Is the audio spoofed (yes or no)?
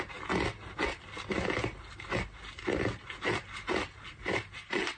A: no